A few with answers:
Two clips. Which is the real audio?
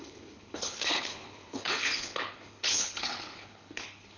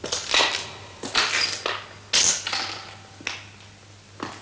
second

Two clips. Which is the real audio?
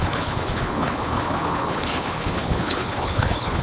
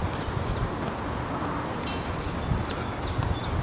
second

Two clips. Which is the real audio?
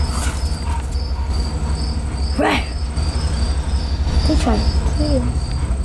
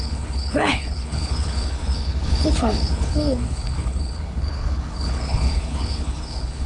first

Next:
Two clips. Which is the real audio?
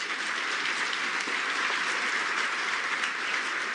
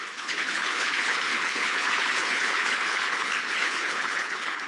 first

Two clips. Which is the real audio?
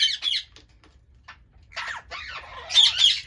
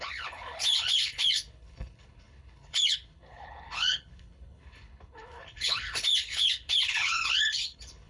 first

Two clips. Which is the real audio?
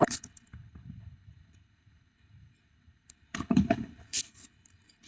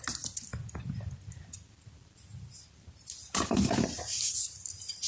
second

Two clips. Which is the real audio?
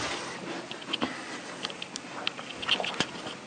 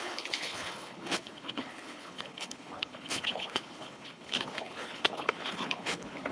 first